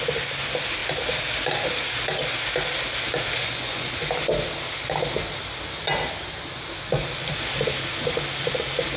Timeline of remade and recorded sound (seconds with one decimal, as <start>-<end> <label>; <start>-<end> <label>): 0.0-3.4 recorded; 3.4-4.1 remade; 4.1-9.0 recorded